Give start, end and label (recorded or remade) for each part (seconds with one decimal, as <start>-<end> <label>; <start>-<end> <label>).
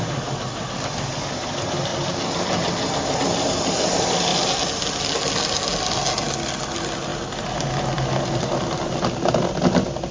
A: 0.0-1.9 remade; 1.9-3.2 recorded; 3.2-4.3 remade; 4.3-6.2 recorded; 6.2-7.1 remade; 7.1-7.7 recorded; 7.7-10.1 remade